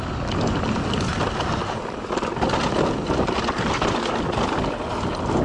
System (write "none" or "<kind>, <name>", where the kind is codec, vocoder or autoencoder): none